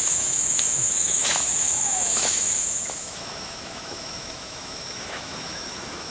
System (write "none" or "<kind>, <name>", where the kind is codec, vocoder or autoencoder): autoencoder, DAC-VAE